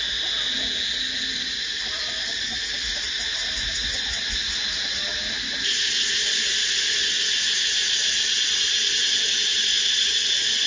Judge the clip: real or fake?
real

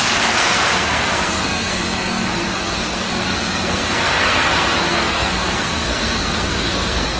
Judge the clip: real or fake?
fake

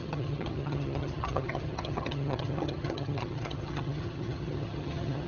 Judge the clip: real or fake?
fake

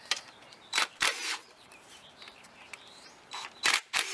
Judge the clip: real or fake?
fake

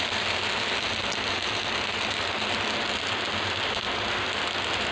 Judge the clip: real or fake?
real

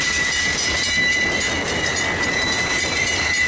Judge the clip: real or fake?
fake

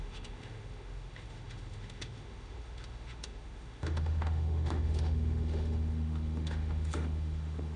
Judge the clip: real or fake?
fake